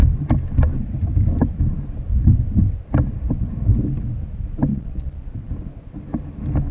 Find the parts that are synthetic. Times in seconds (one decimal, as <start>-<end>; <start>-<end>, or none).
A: 4.7-5.5